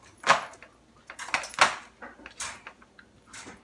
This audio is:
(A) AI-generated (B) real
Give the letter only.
B